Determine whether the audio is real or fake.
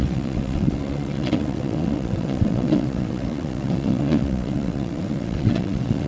fake